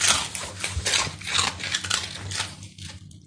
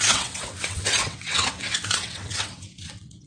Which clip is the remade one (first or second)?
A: second